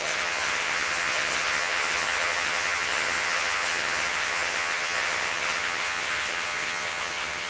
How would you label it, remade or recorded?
remade